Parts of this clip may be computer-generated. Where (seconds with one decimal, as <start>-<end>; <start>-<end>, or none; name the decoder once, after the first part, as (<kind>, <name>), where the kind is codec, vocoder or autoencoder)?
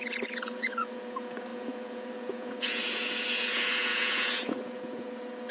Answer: 0.0-5.5 (vocoder, Vocos)